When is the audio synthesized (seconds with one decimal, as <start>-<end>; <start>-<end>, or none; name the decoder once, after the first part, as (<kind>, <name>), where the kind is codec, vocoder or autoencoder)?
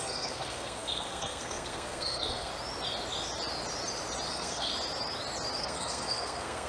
0.0-2.5 (codec, SNAC); 4.3-4.7; 5.6-6.7